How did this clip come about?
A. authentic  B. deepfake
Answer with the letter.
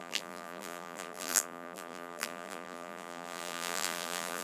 B